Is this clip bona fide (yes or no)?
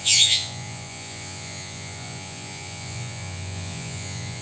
no